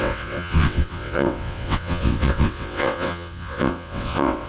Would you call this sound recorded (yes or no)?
no